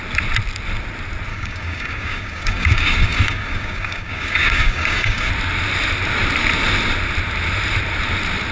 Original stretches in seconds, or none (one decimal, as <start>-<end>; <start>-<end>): 0.0-1.3; 5.3-8.5